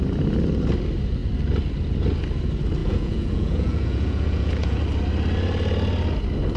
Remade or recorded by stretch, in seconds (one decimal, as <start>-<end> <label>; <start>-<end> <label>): 0.0-2.8 recorded; 2.8-4.8 remade; 4.8-6.6 recorded